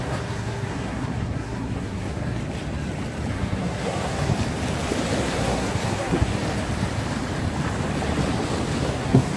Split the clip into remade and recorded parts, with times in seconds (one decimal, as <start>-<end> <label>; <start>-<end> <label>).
0.0-2.4 remade; 2.4-3.3 recorded; 3.3-4.3 remade; 4.3-5.2 recorded; 5.2-6.3 remade; 6.3-8.8 recorded; 8.8-9.4 remade